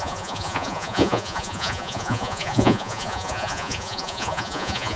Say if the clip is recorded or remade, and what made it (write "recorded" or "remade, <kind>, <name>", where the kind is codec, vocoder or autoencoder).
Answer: remade, vocoder, Vocos